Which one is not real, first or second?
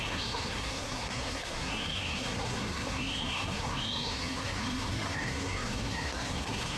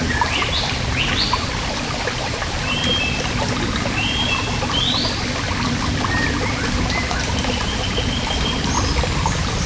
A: first